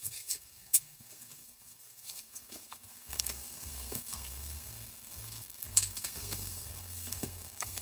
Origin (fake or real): fake